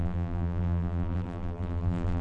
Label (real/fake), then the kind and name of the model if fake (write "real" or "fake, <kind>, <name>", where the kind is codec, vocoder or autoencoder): fake, vocoder, BigVGAN v2